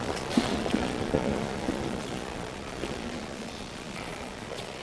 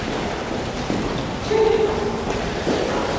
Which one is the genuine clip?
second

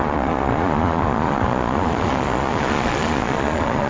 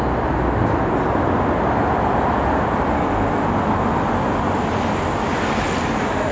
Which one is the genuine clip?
second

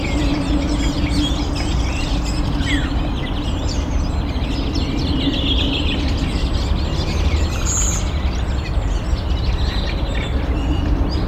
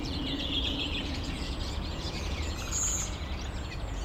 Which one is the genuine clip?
first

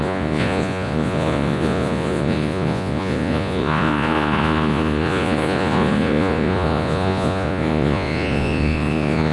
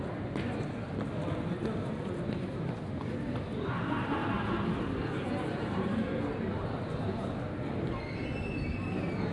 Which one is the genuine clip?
second